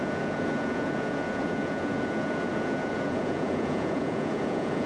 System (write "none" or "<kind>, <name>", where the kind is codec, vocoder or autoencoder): vocoder, Vocos